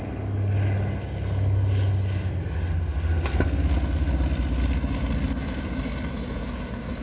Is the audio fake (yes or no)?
no